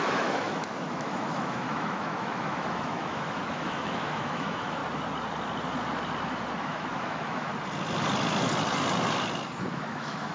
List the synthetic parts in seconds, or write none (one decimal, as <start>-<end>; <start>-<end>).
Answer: 0.0-4.8; 6.6-7.5; 9.7-10.3